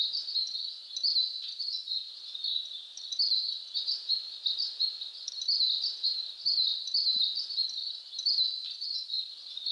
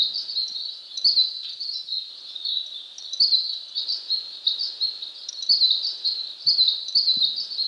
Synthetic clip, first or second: first